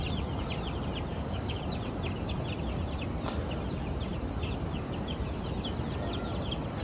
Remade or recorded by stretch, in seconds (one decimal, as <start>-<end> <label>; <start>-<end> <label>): 0.0-1.1 recorded; 1.1-1.6 remade; 1.6-6.8 recorded